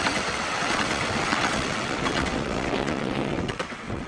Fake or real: fake